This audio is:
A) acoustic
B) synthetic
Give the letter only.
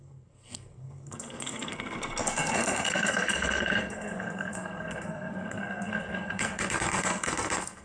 B